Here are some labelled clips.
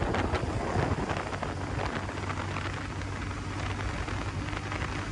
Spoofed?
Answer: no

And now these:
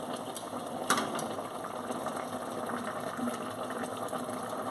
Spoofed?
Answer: no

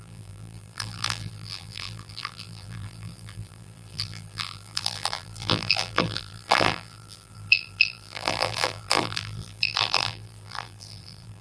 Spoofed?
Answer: yes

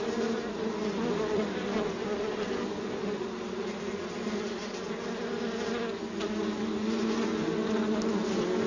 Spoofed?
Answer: no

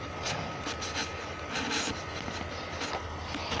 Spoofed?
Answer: no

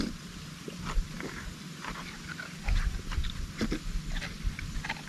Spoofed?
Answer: no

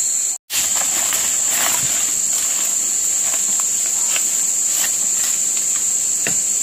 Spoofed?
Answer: no